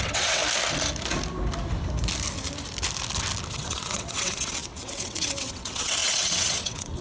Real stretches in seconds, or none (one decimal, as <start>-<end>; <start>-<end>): 0.4-3.5